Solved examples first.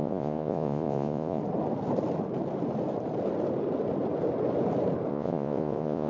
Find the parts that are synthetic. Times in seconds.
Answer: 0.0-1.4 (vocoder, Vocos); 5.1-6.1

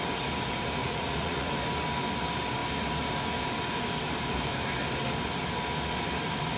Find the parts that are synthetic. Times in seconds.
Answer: 0.8-1.5 (vocoder, Vocos)

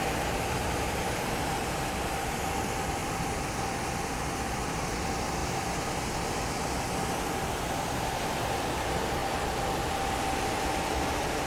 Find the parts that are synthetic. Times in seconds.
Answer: 0.0-3.0 (vocoder, BigVGAN v2); 4.8-5.4; 8.6-9.2; 10.1-11.5

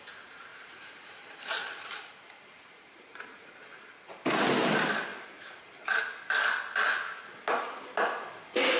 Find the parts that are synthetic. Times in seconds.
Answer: 0.5-3.5 (vocoder, BigVGAN v2); 5.1-6.0

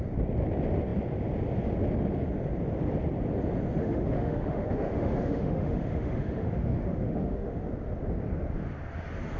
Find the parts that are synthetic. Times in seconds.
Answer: 3.8-7.7 (autoencoder, DAC-VAE)

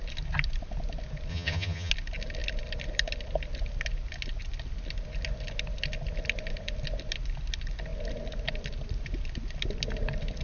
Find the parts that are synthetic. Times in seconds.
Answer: 1.3-1.9 (vocoder, HiFi-GAN)

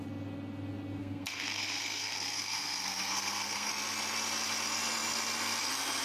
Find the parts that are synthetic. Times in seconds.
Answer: 1.0-3.7 (codec, SNAC)

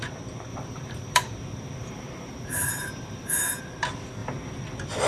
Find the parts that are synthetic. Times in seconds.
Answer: 0.5-3.6 (vocoder, BigVGAN v2)